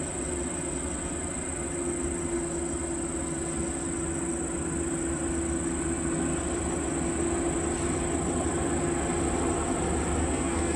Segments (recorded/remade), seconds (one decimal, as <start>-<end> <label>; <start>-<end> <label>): 0.0-10.2 recorded; 10.2-10.8 remade